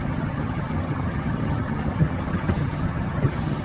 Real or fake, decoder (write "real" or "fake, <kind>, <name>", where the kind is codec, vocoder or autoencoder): fake, vocoder, HiFi-GAN